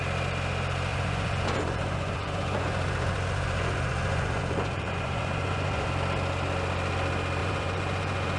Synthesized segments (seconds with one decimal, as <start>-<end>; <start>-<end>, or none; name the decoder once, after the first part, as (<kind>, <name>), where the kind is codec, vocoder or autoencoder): 0.9-5.9 (vocoder, Vocos); 7.4-8.4